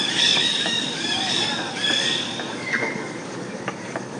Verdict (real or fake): fake